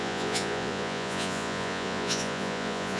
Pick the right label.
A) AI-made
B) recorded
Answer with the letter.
A